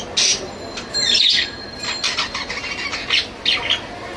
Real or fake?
real